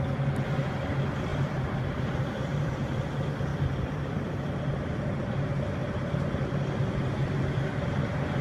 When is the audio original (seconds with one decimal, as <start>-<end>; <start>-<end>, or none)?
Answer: 0.0-1.3; 3.0-3.5; 4.3-8.4